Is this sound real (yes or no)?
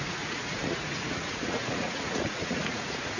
no